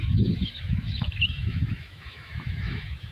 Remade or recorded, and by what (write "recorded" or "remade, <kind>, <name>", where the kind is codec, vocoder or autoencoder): remade, autoencoder, DAC-VAE